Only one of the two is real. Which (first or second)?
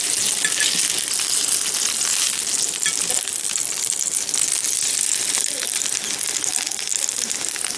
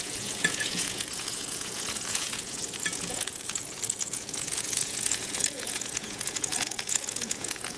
first